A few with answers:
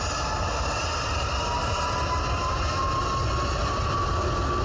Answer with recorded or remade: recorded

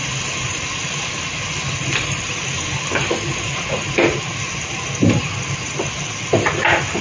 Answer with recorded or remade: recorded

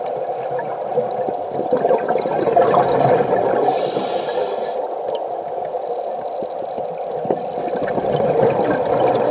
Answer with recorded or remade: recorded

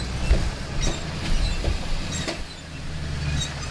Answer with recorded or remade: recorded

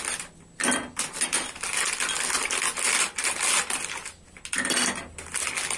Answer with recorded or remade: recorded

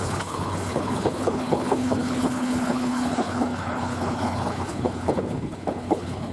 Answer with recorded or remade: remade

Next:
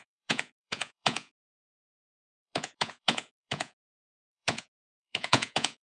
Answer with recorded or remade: remade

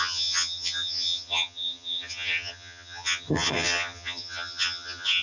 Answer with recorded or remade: remade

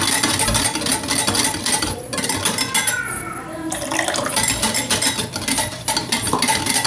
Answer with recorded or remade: recorded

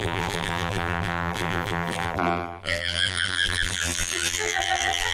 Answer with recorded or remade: remade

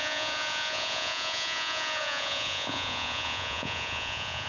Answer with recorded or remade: remade